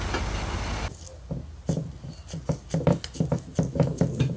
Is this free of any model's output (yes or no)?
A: yes